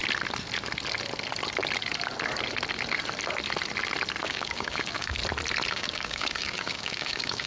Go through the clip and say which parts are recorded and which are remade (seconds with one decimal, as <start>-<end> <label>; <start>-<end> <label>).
0.0-4.2 recorded; 4.2-5.2 remade; 5.2-5.7 recorded; 5.7-7.5 remade